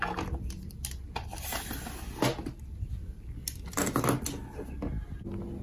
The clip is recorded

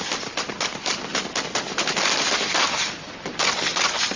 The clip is recorded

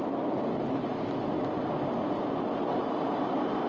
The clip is recorded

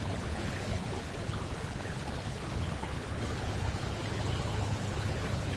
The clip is remade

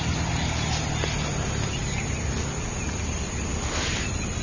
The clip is recorded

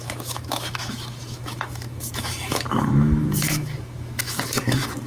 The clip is remade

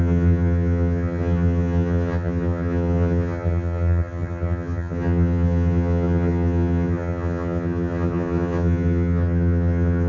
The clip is remade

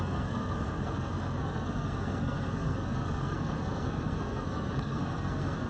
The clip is remade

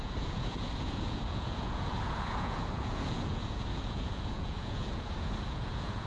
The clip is remade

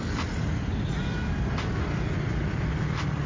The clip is recorded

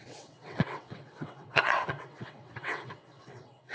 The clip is remade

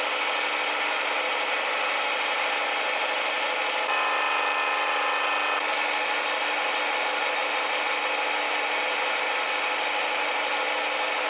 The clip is recorded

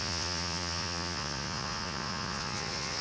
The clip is remade